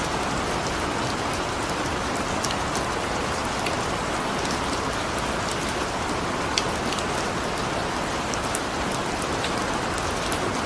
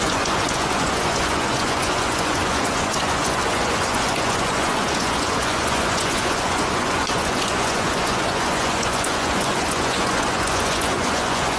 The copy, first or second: second